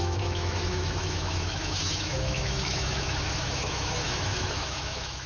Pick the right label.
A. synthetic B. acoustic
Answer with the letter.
A